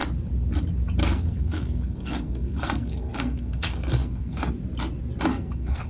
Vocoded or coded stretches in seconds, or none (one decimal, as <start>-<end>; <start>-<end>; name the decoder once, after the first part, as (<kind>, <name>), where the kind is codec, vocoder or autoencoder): 1.0-4.5 (codec, SNAC); 5.3-5.9